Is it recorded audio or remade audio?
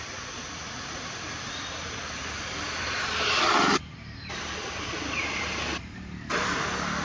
remade